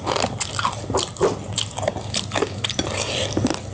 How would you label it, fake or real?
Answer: real